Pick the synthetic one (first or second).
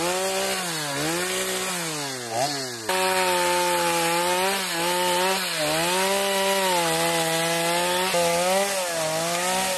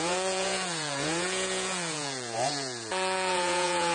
second